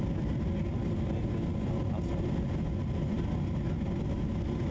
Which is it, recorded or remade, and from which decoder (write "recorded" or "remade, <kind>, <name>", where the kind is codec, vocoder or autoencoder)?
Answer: recorded